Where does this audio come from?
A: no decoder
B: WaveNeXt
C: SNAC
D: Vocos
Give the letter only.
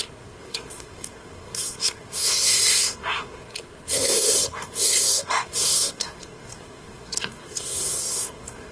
C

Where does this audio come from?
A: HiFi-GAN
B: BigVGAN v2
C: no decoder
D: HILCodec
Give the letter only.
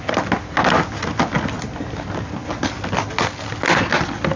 C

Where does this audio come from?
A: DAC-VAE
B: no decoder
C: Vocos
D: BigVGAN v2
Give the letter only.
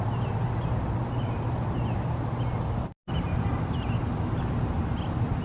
B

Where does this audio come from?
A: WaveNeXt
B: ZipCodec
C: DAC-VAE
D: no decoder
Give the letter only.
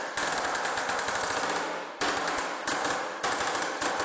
D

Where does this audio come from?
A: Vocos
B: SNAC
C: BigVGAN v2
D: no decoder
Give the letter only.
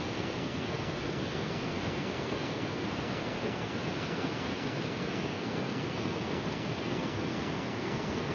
B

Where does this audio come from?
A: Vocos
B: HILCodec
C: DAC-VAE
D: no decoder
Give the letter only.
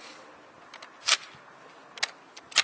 D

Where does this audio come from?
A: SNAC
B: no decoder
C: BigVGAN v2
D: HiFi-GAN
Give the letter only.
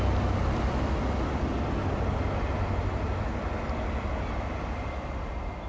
B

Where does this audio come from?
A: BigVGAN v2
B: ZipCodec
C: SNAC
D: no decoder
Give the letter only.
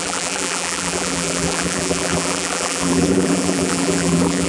A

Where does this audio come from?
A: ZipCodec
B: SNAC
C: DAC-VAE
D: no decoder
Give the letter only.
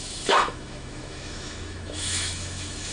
C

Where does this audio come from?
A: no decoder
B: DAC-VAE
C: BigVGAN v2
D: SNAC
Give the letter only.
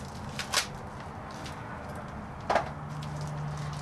A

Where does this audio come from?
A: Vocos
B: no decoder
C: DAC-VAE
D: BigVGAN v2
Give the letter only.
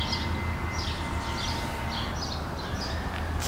B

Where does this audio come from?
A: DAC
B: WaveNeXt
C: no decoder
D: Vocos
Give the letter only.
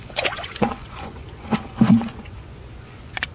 D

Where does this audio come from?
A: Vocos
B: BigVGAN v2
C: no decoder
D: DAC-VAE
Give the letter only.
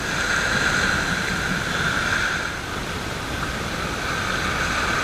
C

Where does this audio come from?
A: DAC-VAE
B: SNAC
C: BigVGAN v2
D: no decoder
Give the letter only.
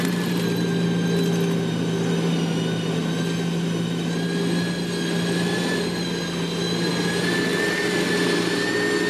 D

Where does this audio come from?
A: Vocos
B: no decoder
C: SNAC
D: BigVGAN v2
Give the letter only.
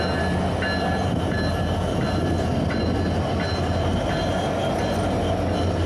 B